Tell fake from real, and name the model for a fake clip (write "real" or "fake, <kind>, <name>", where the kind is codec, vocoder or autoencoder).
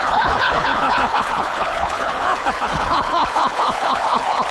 fake, codec, HILCodec